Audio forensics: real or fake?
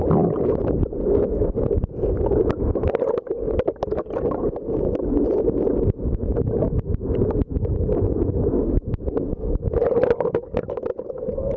real